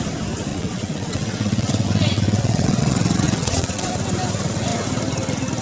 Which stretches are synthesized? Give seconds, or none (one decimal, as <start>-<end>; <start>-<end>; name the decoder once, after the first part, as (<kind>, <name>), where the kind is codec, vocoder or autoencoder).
0.5-3.9 (vocoder, WaveNeXt)